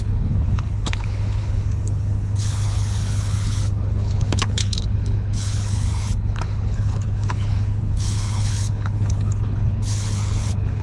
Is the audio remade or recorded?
remade